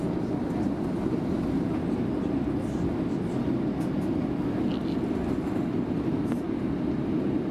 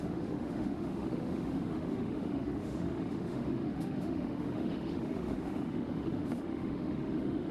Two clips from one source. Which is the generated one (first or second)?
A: second